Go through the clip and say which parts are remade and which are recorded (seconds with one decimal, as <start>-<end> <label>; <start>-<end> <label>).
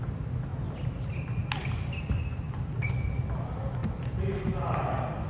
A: 0.0-5.3 recorded